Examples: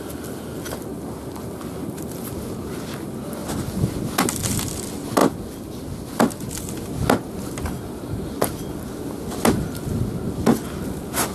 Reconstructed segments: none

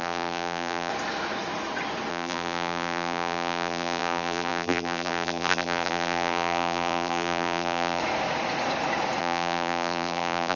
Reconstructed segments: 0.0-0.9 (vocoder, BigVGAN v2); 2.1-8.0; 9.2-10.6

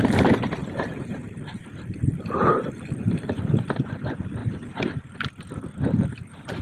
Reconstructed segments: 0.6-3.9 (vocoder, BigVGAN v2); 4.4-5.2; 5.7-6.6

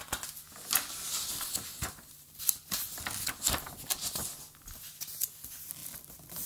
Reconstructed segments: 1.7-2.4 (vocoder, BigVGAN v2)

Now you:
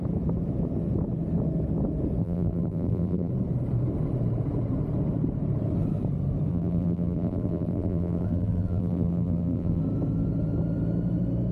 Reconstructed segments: 2.2-3.3 (vocoder, BigVGAN v2); 6.5-9.8

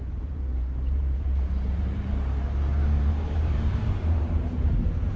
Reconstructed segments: 0.0-5.2 (vocoder, BigVGAN v2)

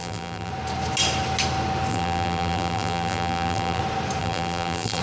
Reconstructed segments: 0.0-0.5 (vocoder, BigVGAN v2); 1.9-3.8; 4.2-5.0